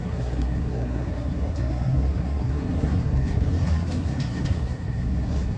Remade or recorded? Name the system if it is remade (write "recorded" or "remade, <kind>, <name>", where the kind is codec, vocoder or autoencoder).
remade, codec, SNAC